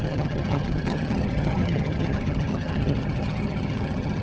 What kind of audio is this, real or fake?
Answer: fake